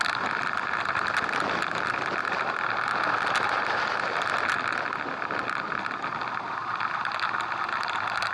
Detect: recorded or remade recorded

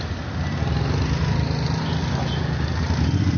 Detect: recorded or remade recorded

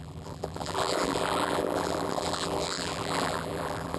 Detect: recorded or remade remade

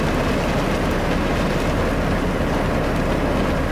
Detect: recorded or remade recorded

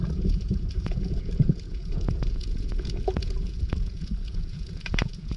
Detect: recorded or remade remade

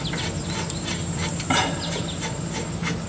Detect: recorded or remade recorded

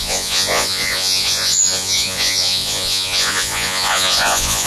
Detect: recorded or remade remade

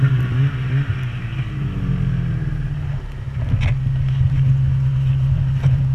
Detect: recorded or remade recorded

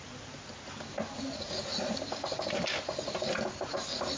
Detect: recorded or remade recorded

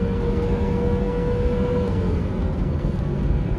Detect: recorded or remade remade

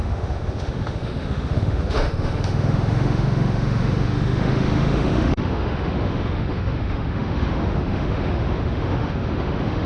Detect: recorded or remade remade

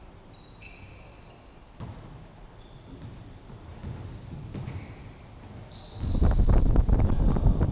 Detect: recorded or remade recorded